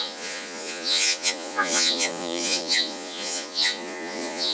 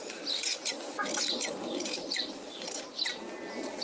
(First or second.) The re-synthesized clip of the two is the first